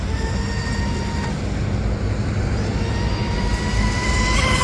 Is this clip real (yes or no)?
yes